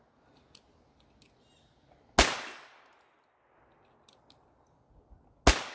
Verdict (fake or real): real